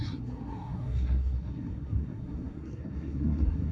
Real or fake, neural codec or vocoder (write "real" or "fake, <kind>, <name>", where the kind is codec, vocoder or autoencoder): fake, codec, SNAC